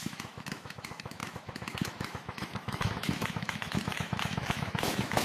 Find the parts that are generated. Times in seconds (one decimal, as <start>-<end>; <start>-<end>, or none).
0.0-5.2